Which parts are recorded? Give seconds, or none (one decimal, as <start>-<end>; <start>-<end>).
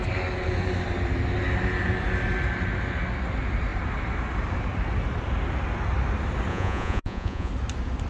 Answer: 0.0-6.5; 7.5-8.1